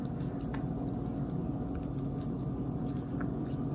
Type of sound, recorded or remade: recorded